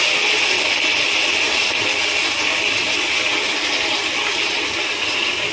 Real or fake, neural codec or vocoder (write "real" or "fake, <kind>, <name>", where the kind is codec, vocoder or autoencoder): real